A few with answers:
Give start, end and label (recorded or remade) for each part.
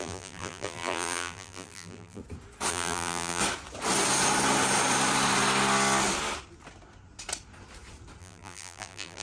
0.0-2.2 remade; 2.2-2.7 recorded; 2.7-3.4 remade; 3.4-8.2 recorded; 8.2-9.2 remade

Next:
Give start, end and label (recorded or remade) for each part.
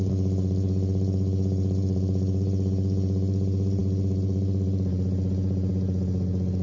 0.0-6.6 remade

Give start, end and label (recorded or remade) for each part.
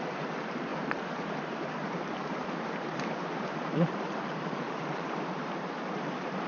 0.0-6.5 remade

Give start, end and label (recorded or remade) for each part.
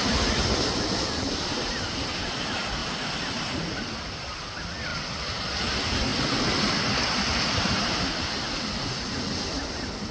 0.0-2.8 recorded; 2.8-3.4 remade; 3.4-6.1 recorded; 6.1-7.9 remade; 7.9-10.1 recorded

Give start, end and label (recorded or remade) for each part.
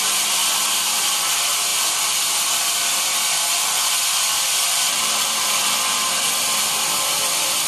0.0-0.4 remade; 0.4-1.2 recorded; 1.2-7.7 remade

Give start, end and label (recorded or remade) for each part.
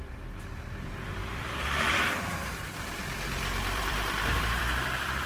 0.0-5.3 remade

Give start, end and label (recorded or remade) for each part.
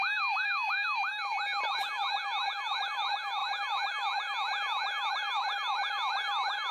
0.0-1.1 remade; 1.1-2.8 recorded; 2.8-3.4 remade; 3.4-5.1 recorded; 5.1-6.7 remade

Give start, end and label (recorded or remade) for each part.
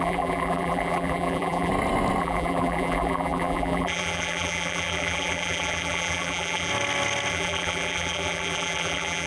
0.0-1.7 remade; 1.7-2.2 recorded; 2.2-6.7 remade; 6.7-7.3 recorded; 7.3-9.3 remade